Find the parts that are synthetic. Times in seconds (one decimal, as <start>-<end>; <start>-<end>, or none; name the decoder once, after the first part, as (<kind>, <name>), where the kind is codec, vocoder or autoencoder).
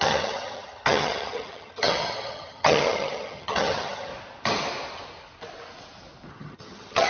0.0-4.1 (vocoder, HiFi-GAN); 6.3-7.1